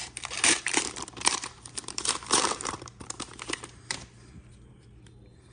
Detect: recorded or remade remade